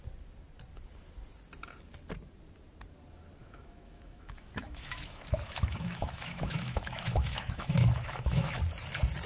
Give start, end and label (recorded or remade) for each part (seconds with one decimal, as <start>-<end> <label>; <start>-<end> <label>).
0.0-3.4 recorded; 3.4-8.6 remade; 8.6-9.3 recorded